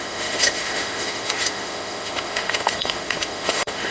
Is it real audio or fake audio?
fake